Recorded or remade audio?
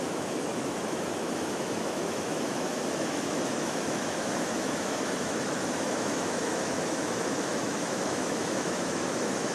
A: remade